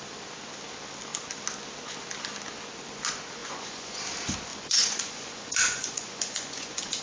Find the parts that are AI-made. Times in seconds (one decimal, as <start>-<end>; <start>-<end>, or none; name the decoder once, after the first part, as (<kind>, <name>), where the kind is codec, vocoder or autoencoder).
3.4-4.0 (vocoder, Vocos); 4.5-7.0